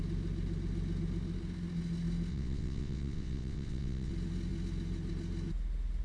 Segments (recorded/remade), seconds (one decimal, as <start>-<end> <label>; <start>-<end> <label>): 0.0-2.3 recorded; 2.3-4.1 remade; 4.1-6.0 recorded